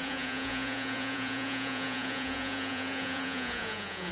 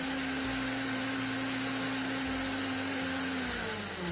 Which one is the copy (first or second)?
first